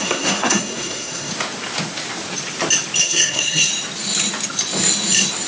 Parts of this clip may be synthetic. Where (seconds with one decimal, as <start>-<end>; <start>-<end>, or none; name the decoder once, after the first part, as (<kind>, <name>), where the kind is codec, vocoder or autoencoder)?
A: 0.0-1.3 (codec, SNAC); 3.0-3.7